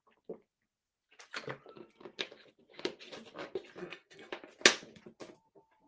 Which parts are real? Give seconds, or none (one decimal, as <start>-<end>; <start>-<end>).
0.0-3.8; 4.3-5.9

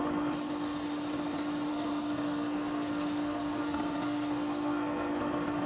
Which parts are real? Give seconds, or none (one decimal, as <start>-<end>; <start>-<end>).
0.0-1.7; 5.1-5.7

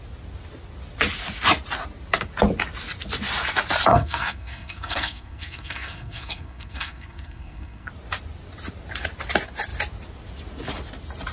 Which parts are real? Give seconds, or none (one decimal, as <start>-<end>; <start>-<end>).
0.0-3.9; 7.9-11.3